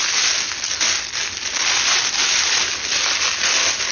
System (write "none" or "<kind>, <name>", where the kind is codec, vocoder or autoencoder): none